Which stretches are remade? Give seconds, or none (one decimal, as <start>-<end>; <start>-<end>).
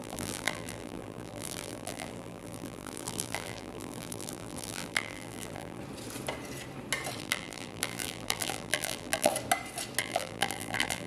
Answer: 0.0-5.8; 7.2-9.3; 10.0-11.1